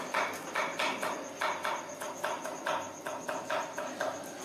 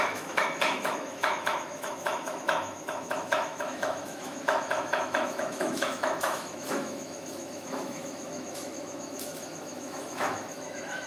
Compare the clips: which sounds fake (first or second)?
second